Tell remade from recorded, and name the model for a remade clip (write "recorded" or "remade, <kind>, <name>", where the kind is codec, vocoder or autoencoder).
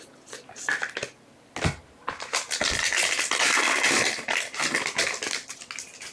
recorded